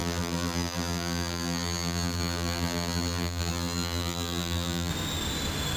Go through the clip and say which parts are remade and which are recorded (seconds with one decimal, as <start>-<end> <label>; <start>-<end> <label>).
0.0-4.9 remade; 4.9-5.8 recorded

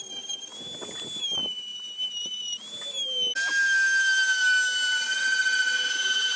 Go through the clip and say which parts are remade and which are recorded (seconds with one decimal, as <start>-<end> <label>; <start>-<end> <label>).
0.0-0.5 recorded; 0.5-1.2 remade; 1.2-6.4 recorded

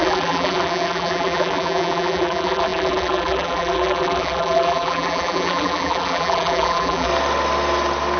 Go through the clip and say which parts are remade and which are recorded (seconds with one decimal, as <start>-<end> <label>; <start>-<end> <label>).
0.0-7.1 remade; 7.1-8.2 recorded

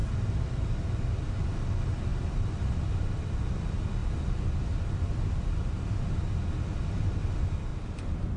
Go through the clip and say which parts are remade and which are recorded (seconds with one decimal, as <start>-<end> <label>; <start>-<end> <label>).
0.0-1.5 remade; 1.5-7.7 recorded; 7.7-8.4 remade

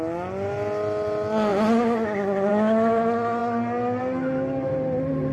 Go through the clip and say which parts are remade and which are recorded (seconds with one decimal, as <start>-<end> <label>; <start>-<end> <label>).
0.0-5.3 recorded

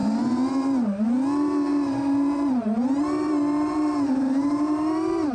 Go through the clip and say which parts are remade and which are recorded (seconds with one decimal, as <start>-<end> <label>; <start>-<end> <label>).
0.0-0.5 remade; 0.5-1.7 recorded; 1.7-5.3 remade